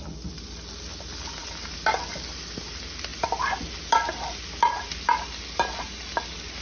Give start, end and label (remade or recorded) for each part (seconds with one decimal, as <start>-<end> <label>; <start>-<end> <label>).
0.0-6.6 recorded